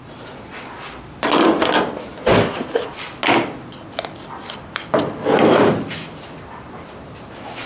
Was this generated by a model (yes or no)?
no